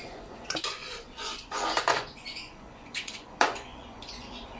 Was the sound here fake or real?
fake